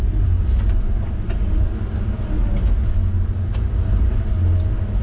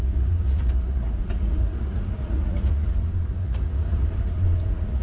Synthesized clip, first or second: second